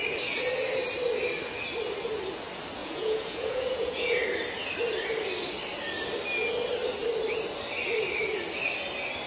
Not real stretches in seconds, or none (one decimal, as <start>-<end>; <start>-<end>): 2.8-4.2